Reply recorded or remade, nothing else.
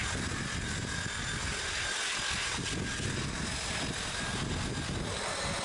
recorded